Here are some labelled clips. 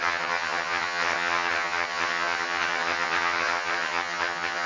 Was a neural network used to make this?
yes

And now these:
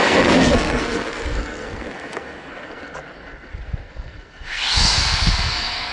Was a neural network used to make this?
yes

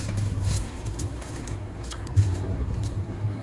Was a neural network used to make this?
yes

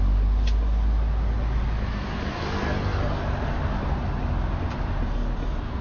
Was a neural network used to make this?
no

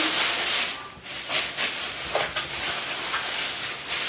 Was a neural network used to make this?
no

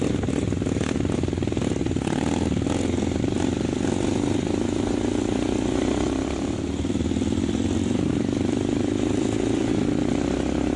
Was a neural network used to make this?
no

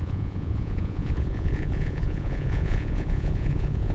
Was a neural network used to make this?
yes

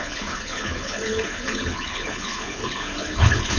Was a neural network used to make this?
yes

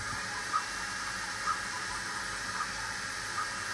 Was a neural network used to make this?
no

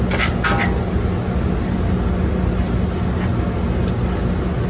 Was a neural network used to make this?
no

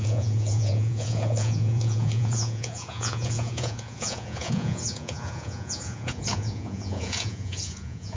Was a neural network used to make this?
yes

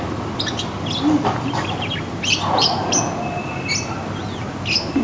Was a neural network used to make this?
no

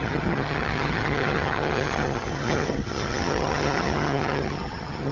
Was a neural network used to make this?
yes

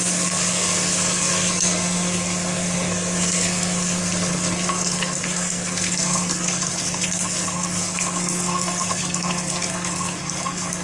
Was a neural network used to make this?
yes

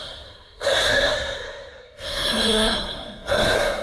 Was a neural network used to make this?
yes